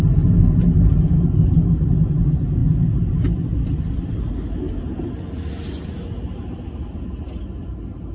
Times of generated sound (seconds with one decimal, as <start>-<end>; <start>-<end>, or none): none